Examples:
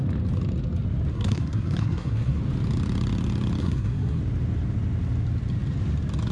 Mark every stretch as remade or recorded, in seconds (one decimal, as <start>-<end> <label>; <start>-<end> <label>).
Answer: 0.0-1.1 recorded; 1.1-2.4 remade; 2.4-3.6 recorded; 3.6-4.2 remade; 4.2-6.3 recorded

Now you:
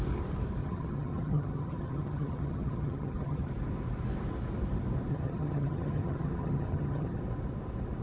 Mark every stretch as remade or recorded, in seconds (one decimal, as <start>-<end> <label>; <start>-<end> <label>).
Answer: 0.0-0.6 recorded; 0.6-3.5 remade; 3.5-5.1 recorded; 5.1-7.2 remade; 7.2-8.0 recorded

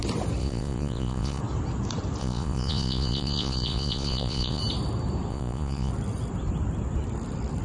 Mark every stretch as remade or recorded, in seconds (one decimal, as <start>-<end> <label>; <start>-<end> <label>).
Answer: 0.0-0.4 recorded; 0.4-1.4 remade; 1.4-2.2 recorded; 2.2-4.6 remade; 4.6-5.3 recorded; 5.3-5.9 remade; 5.9-7.6 recorded